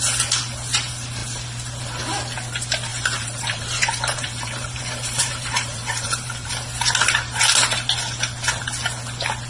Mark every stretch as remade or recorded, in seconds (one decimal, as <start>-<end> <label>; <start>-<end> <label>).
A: 0.0-2.9 recorded; 2.9-6.5 remade; 6.5-9.5 recorded